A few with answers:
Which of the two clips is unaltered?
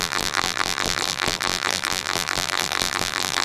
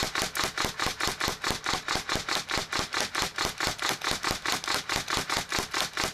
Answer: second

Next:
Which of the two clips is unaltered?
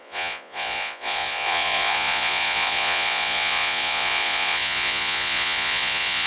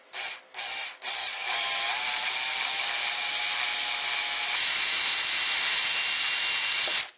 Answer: second